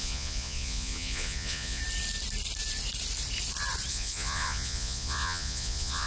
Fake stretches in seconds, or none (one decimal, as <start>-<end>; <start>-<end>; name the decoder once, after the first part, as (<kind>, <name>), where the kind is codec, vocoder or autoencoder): 0.0-1.8 (vocoder, Vocos); 3.9-6.1